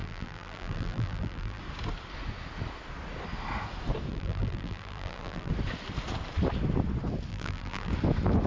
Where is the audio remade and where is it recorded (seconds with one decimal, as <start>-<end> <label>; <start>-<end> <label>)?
0.0-1.6 remade; 1.6-4.1 recorded; 4.1-5.5 remade; 5.5-7.3 recorded; 7.3-7.9 remade; 7.9-8.5 recorded